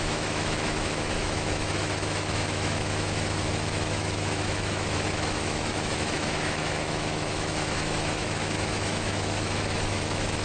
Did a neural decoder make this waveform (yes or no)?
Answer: yes